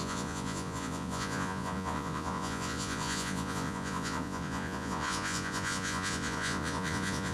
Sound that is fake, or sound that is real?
fake